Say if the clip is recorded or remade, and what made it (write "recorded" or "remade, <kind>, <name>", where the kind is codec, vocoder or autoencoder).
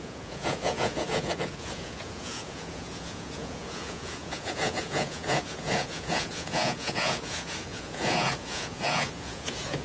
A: remade, vocoder, Vocos